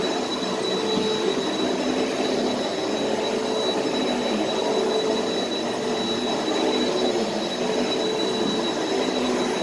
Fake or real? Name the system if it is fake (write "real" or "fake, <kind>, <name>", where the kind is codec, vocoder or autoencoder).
real